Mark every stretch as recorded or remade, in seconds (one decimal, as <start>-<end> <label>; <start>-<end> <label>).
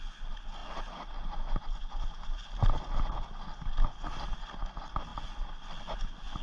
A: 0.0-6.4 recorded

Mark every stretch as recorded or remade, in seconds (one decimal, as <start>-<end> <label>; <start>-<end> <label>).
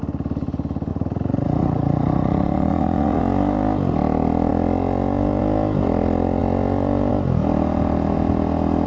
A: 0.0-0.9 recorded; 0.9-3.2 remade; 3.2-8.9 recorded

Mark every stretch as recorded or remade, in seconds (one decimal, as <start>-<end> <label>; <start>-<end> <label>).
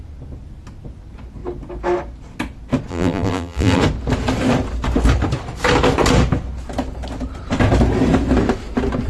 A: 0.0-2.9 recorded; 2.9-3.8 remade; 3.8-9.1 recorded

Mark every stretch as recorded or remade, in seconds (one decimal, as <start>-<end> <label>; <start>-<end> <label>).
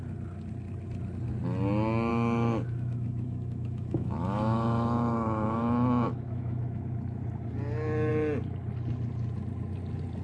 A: 0.0-2.1 recorded; 2.1-7.2 remade; 7.2-10.2 recorded